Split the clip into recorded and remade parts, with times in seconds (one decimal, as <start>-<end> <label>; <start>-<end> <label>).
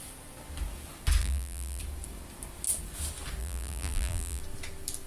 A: 0.0-1.2 recorded; 1.2-1.8 remade; 1.8-3.4 recorded; 3.4-4.4 remade; 4.4-5.1 recorded